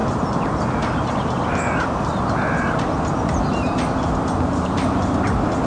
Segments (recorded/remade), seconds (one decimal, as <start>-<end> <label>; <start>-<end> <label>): 0.0-5.7 recorded